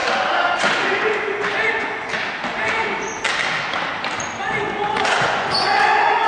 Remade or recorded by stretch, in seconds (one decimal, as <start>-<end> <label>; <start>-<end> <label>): 0.0-0.6 recorded; 0.6-2.1 remade; 2.1-4.4 recorded; 4.4-6.3 remade